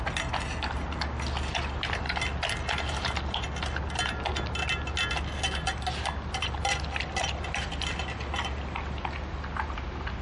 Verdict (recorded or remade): recorded